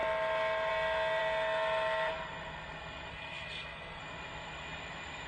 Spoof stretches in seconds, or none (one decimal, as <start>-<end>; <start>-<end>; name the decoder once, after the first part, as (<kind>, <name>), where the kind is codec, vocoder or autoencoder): 3.1-4.0 (codec, SNAC)